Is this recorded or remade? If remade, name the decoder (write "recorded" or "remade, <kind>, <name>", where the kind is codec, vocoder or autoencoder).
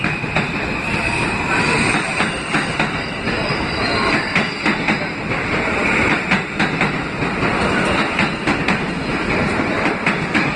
recorded